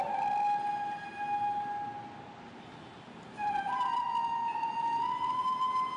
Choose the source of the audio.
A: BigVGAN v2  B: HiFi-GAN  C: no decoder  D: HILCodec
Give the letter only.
C